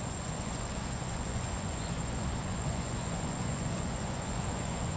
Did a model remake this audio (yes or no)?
yes